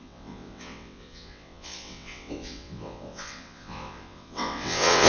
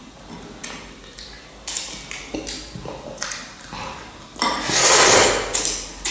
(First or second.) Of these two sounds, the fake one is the first